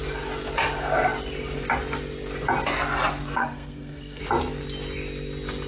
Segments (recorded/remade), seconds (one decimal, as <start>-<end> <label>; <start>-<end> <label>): 0.0-3.4 recorded; 3.4-4.2 remade; 4.2-5.7 recorded